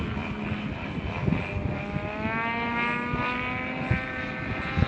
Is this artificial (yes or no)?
no